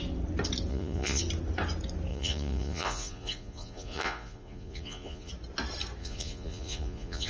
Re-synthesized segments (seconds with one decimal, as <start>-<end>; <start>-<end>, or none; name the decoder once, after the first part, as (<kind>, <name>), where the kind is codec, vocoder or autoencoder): 0.7-1.2 (vocoder, Vocos); 2.1-5.3; 6.0-7.3